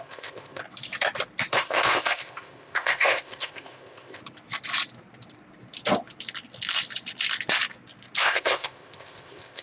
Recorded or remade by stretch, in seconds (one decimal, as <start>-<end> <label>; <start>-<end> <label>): 0.0-0.6 remade; 0.6-1.5 recorded; 1.5-4.2 remade; 4.2-8.2 recorded; 8.2-9.6 remade